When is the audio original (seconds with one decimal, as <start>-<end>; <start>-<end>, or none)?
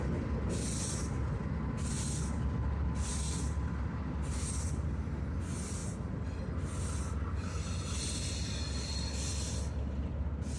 0.0-10.6